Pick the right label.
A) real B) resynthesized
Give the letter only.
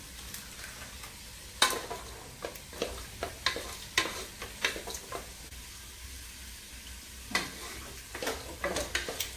A